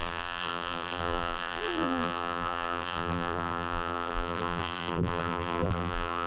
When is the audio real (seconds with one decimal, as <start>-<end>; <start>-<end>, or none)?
none